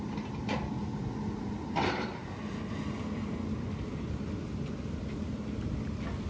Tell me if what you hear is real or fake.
real